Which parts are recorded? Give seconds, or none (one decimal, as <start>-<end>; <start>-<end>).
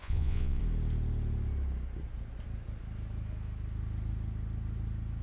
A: 0.6-5.2